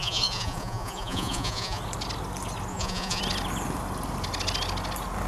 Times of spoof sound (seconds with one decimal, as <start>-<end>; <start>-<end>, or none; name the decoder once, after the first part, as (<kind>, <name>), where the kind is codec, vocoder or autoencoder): 0.0-1.8 (vocoder, Vocos); 2.7-3.2